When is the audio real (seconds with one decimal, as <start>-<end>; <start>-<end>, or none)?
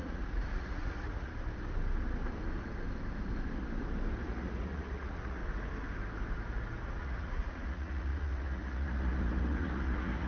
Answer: 1.3-4.2; 5.4-7.0